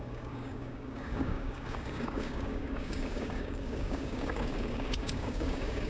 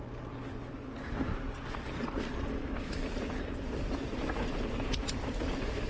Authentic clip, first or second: second